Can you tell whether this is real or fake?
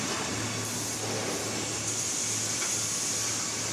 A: real